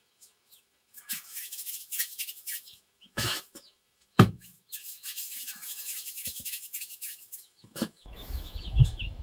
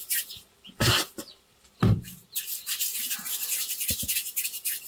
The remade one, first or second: first